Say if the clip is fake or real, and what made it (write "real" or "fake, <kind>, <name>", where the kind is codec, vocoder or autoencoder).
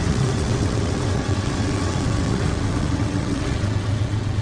fake, vocoder, WaveNeXt